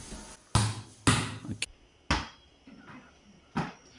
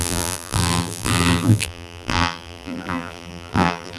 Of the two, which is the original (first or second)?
first